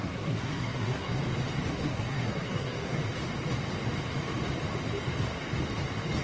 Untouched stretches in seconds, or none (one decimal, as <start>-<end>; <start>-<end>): 1.2-1.7; 3.0-6.2